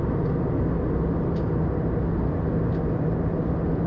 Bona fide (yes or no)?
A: yes